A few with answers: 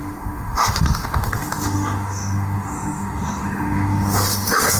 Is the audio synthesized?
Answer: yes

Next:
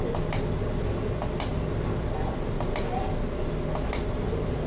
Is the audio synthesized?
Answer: no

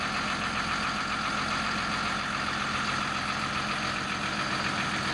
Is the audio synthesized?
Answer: no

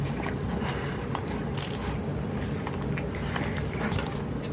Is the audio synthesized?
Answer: no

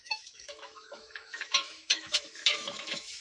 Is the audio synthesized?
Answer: yes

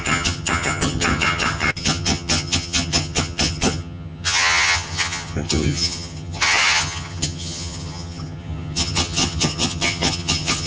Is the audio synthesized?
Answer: yes